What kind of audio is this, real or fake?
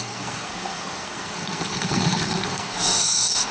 fake